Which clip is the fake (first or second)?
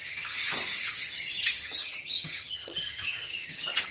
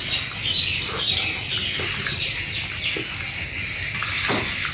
first